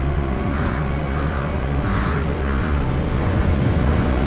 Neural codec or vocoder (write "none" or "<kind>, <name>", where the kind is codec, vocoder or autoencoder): vocoder, Vocos